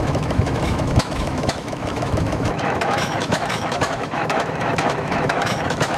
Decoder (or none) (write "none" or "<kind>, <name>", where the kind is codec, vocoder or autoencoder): autoencoder, DAC-VAE